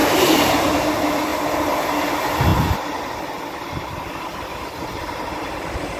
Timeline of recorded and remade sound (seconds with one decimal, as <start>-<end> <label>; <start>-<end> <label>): 0.0-0.9 remade; 0.9-1.3 recorded; 1.3-2.1 remade; 2.1-6.0 recorded